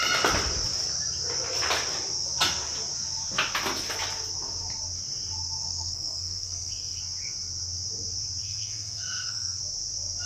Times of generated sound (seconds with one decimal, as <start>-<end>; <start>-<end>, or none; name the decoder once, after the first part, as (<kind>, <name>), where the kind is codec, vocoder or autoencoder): 5.6-7.0 (codec, SNAC); 8.4-9.6